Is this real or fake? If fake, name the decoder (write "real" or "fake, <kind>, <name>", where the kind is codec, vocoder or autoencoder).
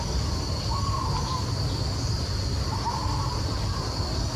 real